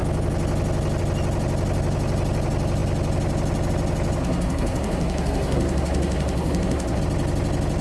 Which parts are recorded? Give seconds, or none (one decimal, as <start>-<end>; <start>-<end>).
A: 0.0-4.2; 7.0-7.8